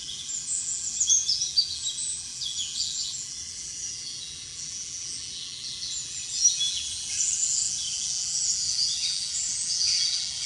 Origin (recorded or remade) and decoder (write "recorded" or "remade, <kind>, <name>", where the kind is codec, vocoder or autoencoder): remade, vocoder, BigVGAN v2